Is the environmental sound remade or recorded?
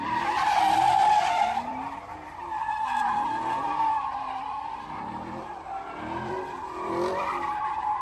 remade